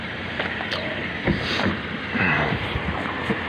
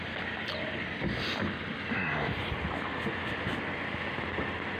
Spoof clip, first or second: first